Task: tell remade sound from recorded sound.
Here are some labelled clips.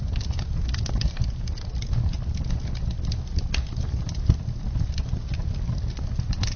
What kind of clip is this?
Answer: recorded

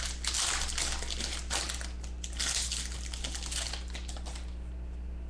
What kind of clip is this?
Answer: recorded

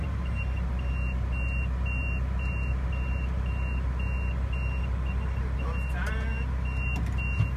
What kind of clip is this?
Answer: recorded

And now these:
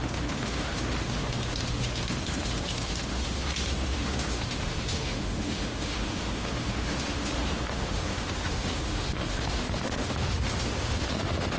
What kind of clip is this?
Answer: remade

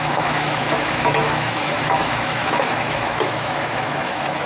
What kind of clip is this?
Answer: remade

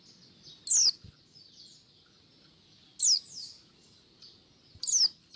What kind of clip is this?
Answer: recorded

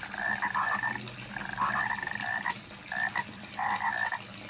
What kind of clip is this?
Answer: recorded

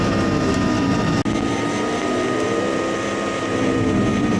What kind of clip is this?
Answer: recorded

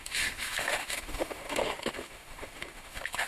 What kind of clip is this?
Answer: remade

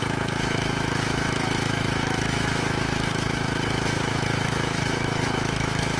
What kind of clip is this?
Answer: remade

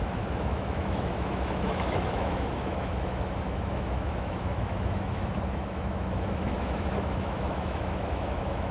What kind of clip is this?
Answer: remade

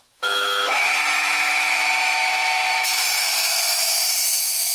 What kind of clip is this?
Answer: remade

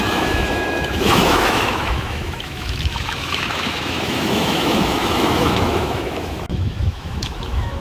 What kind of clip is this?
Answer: remade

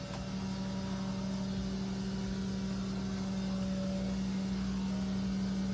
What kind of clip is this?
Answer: recorded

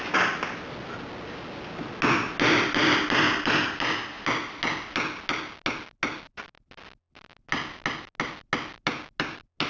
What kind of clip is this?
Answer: recorded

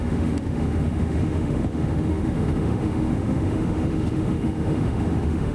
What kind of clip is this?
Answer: remade